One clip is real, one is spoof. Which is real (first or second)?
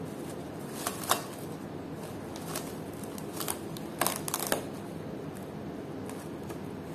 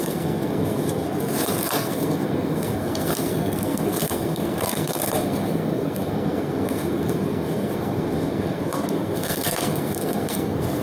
first